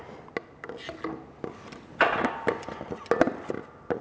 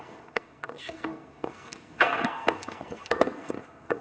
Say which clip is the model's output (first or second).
second